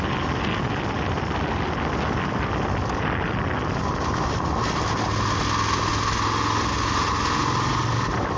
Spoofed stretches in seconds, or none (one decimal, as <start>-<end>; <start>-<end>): none